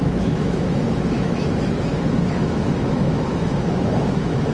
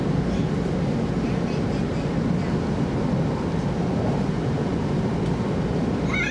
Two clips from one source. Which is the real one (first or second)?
second